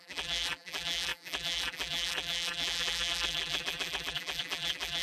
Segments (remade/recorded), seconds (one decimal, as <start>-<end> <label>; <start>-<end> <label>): 0.0-5.0 remade